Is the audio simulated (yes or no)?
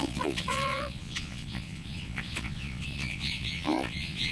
yes